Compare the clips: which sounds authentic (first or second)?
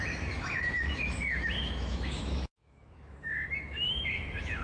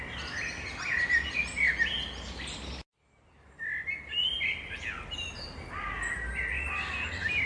second